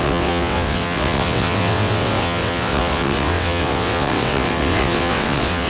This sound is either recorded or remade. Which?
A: remade